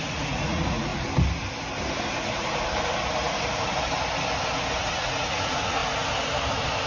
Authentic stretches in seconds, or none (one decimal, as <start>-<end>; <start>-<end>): 0.9-4.8; 5.8-6.9